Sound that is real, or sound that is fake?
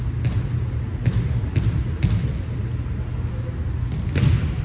real